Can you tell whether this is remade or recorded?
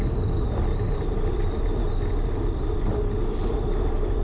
recorded